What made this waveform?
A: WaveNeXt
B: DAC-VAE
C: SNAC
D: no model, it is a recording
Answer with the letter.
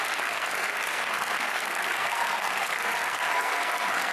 C